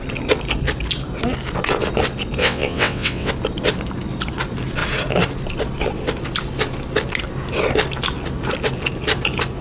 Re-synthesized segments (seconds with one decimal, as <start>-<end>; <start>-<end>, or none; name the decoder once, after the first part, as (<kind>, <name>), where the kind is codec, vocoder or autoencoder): 2.4-3.3 (vocoder, WaveNeXt)